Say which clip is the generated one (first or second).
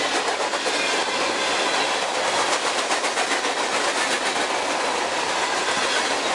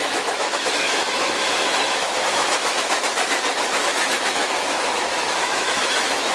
second